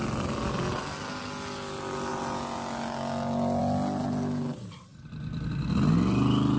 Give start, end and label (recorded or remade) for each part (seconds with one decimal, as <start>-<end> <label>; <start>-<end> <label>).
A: 0.0-6.6 recorded